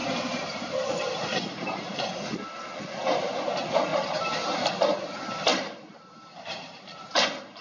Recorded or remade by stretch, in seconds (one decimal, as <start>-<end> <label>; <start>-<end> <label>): 0.0-2.1 remade; 2.1-5.5 recorded; 5.5-7.0 remade; 7.0-7.6 recorded